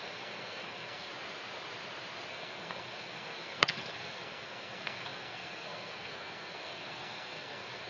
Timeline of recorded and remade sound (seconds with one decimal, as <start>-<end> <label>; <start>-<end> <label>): 0.0-1.1 remade; 1.1-2.3 recorded; 2.3-7.9 remade